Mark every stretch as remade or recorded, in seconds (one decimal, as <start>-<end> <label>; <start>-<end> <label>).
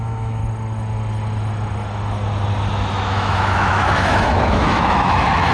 0.0-0.4 remade; 0.4-2.9 recorded; 2.9-5.5 remade